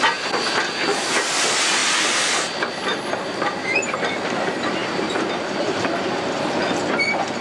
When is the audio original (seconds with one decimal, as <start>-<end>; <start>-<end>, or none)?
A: 0.0-1.8; 2.8-4.8; 6.9-7.4